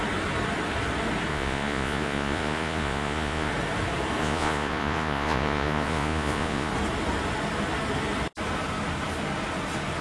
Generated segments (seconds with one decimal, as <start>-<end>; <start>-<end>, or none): 1.3-3.5; 4.2-6.7